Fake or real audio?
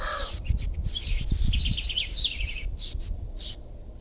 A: real